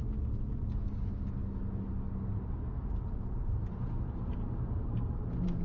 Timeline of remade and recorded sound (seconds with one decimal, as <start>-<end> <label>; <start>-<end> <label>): 0.0-5.6 recorded